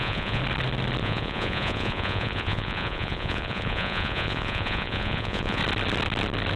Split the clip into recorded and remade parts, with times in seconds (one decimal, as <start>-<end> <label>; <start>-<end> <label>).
0.0-0.4 remade; 0.4-1.0 recorded; 1.0-5.6 remade; 5.6-6.6 recorded